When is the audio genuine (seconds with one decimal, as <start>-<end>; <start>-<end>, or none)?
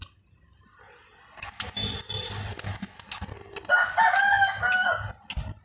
0.0-5.6